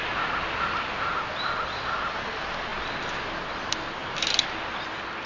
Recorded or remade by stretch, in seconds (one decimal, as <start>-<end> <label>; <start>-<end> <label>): 0.0-5.3 recorded